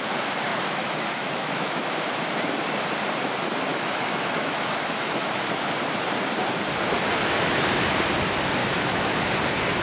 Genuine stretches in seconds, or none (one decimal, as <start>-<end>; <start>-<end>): 0.0-0.5; 1.8-3.7; 5.3-8.6; 9.3-9.8